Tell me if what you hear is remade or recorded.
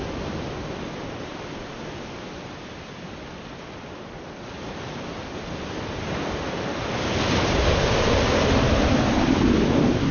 recorded